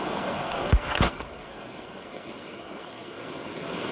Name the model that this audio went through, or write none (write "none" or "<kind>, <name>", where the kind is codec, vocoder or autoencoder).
codec, SNAC